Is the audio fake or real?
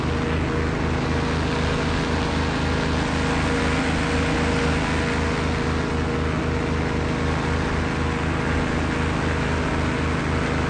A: real